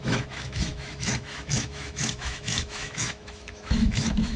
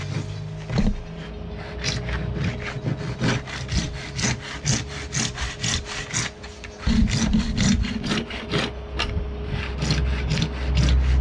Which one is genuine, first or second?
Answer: second